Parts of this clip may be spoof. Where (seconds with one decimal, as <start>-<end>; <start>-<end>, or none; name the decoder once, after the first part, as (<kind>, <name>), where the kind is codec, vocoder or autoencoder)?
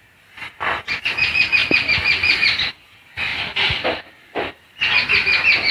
1.6-2.7 (vocoder, BigVGAN v2)